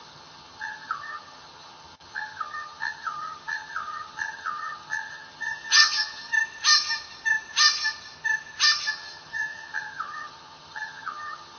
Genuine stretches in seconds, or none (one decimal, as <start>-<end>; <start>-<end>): 6.3-8.9